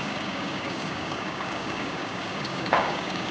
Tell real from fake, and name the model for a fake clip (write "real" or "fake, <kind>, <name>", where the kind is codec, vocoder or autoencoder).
fake, codec, DAC